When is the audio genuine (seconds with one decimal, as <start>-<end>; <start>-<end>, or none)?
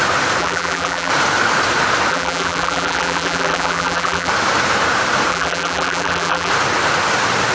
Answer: 0.0-0.4; 1.1-2.1; 4.3-5.3; 6.5-7.5